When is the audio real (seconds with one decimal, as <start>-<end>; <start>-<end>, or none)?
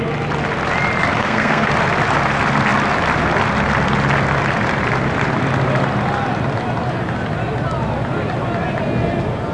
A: 0.0-1.2; 1.7-9.5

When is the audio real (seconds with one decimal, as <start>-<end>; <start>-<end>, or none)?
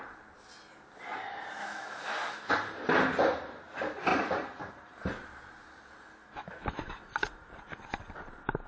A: 0.0-1.6; 2.5-6.2; 7.2-8.7